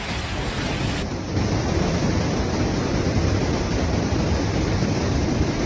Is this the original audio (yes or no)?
yes